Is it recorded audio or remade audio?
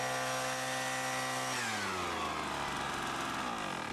recorded